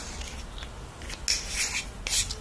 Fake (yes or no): no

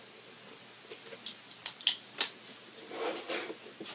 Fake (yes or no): no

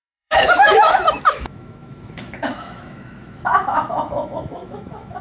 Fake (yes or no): yes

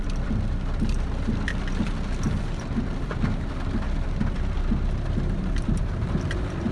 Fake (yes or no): yes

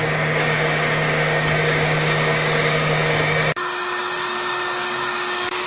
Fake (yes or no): yes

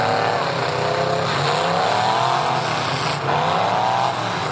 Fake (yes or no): no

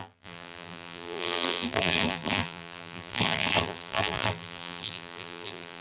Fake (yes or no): yes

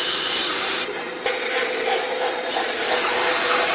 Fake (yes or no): yes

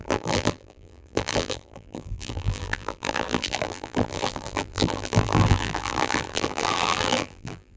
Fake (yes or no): yes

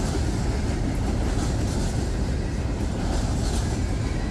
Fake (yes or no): no